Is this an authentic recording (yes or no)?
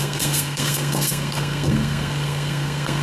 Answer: no